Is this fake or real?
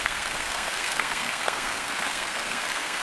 fake